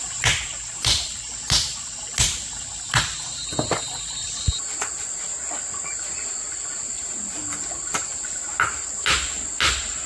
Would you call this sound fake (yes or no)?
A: no